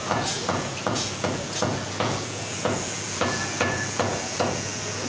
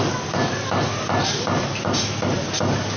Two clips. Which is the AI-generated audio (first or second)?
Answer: first